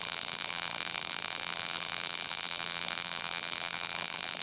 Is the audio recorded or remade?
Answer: remade